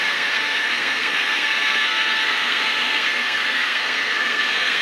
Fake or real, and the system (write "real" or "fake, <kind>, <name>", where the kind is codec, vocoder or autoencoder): fake, codec, SNAC